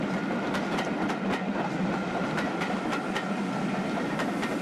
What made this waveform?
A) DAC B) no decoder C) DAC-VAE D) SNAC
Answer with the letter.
B